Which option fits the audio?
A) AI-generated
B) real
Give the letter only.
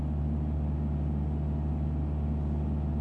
B